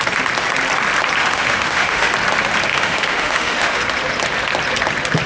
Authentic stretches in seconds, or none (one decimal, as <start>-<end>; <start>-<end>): 0.0-1.2; 2.1-2.7; 3.8-5.3